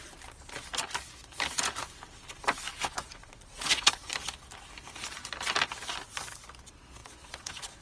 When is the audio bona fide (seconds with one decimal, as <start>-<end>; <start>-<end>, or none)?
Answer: 0.0-2.9; 4.1-7.0